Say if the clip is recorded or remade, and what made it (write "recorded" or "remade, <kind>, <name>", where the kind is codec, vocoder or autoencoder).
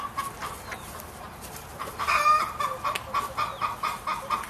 recorded